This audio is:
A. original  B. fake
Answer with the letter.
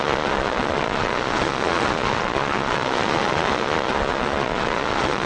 B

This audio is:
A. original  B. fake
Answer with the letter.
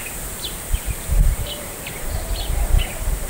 B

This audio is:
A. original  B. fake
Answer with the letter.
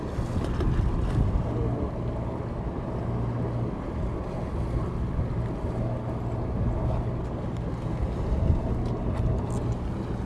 A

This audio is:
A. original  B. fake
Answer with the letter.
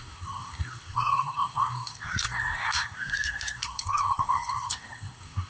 B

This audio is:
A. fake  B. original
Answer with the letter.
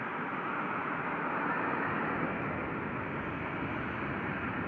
B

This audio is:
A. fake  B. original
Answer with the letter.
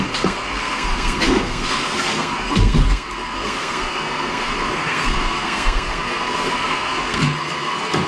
A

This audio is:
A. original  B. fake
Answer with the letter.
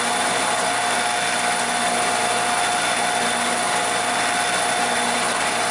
A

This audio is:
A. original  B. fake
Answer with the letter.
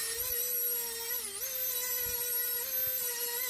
A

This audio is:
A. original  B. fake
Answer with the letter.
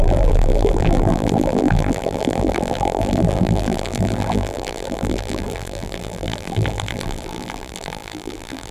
B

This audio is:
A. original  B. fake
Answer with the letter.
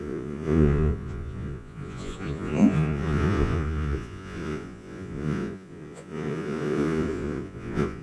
B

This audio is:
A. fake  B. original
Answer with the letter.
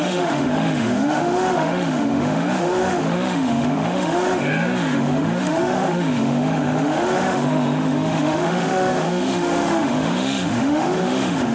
A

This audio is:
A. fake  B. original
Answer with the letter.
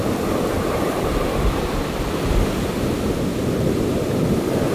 B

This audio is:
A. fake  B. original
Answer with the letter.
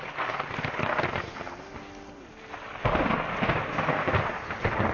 B